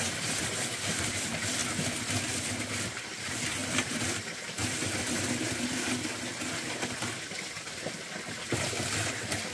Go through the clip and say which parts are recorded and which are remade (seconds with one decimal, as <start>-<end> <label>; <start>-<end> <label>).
0.0-9.5 recorded